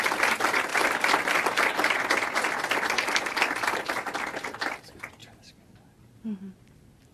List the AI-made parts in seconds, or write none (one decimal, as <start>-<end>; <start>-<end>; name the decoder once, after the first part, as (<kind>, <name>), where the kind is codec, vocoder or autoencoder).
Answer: none

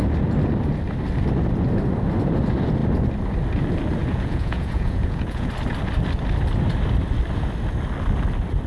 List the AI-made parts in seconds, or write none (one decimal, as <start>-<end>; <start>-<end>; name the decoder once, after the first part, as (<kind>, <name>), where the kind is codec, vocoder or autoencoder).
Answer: 4.0-5.5 (vocoder, Vocos)